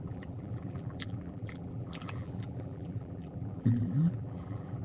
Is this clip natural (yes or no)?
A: no